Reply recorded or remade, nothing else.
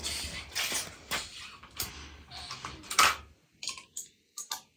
recorded